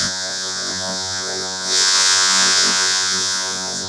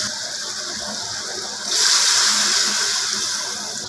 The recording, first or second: second